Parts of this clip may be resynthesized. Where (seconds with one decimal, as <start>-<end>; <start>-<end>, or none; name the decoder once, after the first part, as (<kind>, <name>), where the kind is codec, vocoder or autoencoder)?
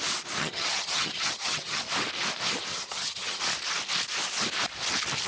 0.4-1.8 (vocoder, HiFi-GAN); 2.7-3.4